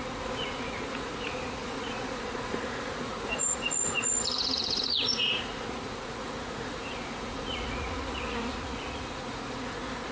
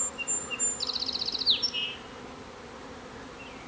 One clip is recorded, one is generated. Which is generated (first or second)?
first